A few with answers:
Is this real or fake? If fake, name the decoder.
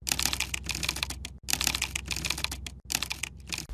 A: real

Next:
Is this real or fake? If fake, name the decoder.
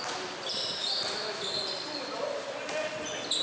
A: real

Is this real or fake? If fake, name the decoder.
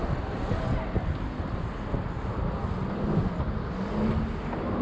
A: real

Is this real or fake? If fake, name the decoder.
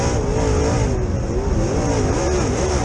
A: real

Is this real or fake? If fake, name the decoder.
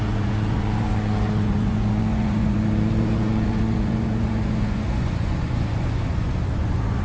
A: fake, vocoder, Vocos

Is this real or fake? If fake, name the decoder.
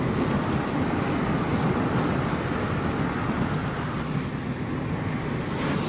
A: real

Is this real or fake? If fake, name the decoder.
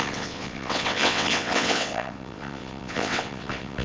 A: fake, vocoder, WaveNeXt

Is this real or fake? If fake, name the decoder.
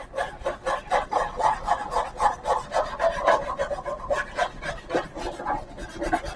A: real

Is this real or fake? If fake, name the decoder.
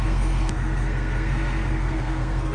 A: fake, codec, SNAC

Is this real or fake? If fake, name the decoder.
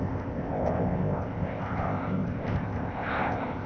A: fake, codec, ZipCodec